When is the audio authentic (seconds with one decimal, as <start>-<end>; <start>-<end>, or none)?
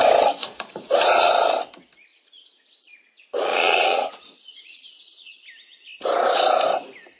0.0-0.4; 1.3-2.1; 5.3-7.2